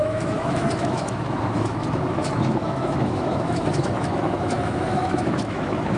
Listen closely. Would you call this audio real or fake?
fake